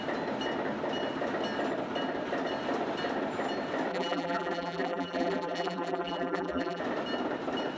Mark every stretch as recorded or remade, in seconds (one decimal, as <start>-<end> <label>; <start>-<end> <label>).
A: 0.0-3.9 recorded; 3.9-6.8 remade; 6.8-7.8 recorded